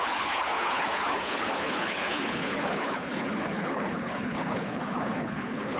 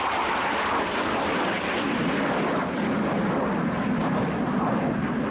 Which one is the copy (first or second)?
first